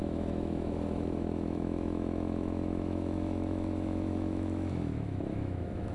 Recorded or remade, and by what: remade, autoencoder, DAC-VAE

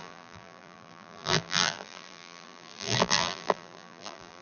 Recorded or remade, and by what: remade, vocoder, BigVGAN v2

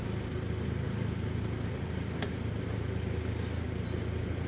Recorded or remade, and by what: recorded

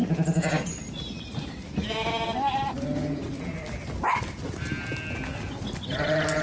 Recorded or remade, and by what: recorded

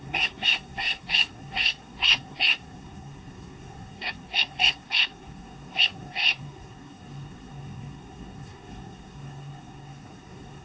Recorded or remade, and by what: remade, codec, SNAC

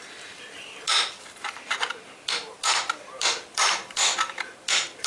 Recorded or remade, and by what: remade, vocoder, BigVGAN v2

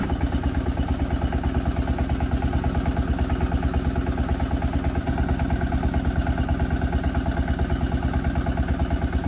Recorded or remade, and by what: recorded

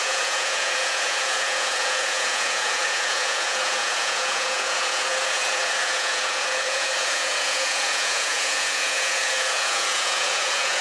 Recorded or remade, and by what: remade, vocoder, Vocos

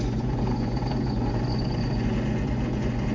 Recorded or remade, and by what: remade, vocoder, Vocos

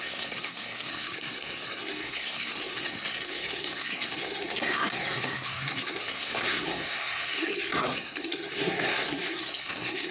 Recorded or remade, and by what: remade, codec, SNAC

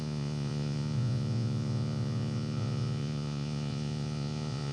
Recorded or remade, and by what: remade, vocoder, Vocos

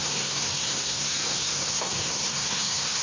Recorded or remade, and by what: remade, codec, SNAC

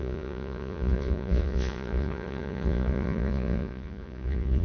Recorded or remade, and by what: remade, vocoder, Vocos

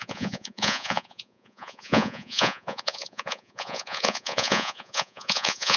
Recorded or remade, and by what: remade, vocoder, Vocos